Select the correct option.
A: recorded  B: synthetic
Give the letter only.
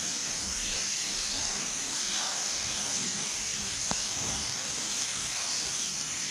B